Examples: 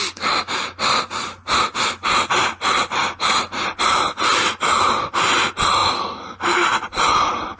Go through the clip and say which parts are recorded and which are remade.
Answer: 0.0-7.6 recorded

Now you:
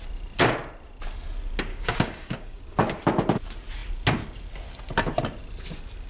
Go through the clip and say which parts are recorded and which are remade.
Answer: 0.0-1.7 recorded; 1.7-2.6 remade; 2.6-6.1 recorded